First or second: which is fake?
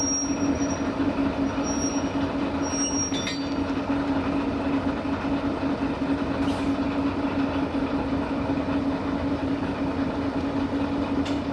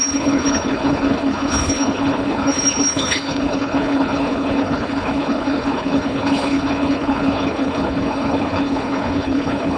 second